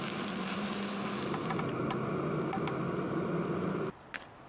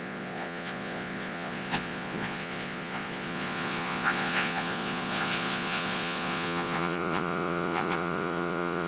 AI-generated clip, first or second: second